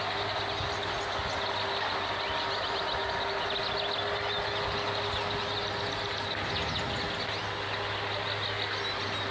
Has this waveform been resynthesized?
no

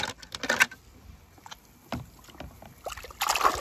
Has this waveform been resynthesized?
no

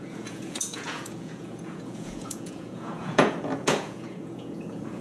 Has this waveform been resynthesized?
yes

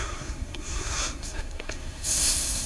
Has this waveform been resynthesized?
yes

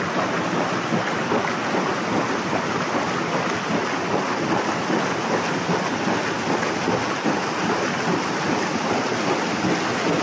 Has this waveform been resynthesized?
no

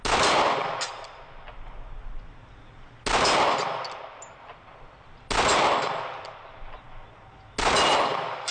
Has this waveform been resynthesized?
no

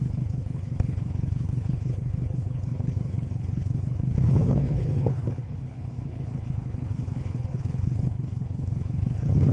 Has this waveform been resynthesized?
yes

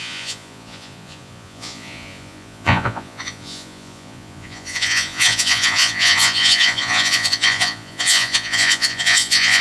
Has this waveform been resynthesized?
yes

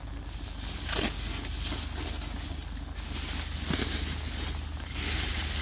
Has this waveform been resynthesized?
no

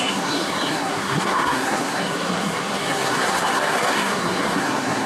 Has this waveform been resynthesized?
yes